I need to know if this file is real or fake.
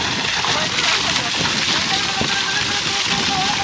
real